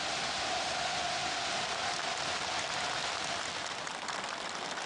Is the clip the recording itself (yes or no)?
yes